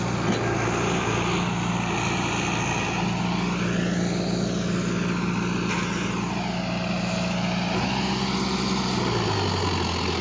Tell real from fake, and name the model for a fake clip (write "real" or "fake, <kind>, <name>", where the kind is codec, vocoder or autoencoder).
real